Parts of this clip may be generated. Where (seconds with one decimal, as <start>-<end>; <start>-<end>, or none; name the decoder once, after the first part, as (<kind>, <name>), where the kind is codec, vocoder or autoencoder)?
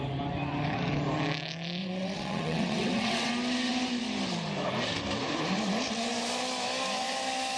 1.8-3.3 (vocoder, WaveNeXt)